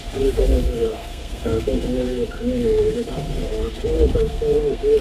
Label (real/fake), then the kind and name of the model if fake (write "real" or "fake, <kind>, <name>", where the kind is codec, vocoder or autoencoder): fake, codec, SNAC